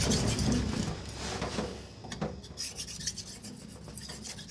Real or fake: real